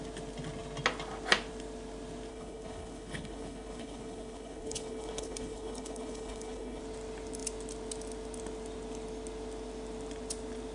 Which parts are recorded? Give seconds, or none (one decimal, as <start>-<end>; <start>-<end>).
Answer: 0.0-2.3; 6.8-10.7